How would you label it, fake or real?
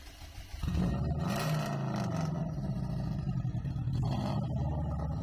real